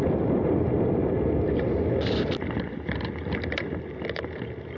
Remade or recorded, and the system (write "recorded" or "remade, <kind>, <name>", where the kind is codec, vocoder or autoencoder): recorded